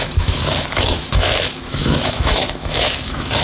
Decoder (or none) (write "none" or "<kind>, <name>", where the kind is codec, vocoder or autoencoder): autoencoder, DAC-VAE